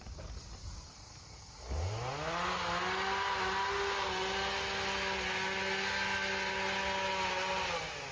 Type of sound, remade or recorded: recorded